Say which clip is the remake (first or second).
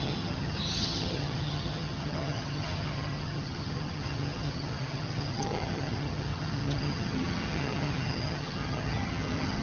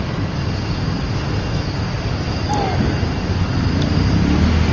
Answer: first